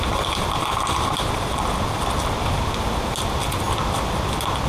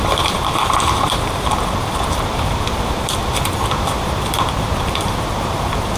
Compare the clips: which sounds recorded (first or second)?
first